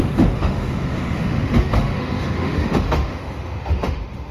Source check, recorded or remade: remade